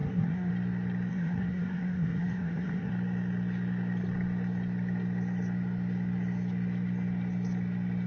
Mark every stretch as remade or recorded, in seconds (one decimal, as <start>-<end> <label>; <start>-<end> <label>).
0.0-0.5 remade; 0.5-1.1 recorded; 1.1-2.9 remade; 2.9-8.1 recorded